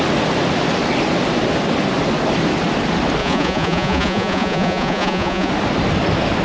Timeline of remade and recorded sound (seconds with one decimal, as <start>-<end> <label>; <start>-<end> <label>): 0.0-3.2 recorded; 3.2-5.5 remade; 5.5-6.4 recorded